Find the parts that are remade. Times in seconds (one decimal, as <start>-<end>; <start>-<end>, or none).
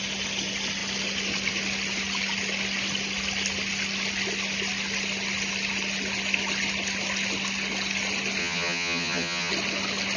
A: 8.4-9.5